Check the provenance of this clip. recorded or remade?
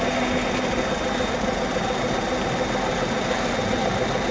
recorded